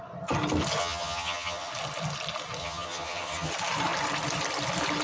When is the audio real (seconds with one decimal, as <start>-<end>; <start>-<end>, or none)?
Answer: 0.0-0.8; 1.7-2.6; 3.5-5.0